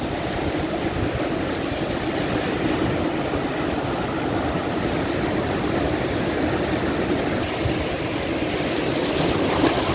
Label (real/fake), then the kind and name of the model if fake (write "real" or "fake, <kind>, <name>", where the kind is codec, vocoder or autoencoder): real